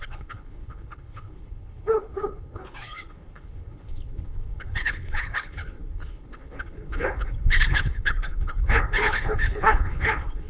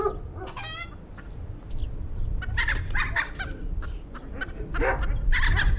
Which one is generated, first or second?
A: first